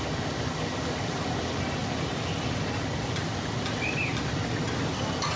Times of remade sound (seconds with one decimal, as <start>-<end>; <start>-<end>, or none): none